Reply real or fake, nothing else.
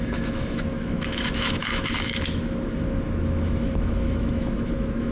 fake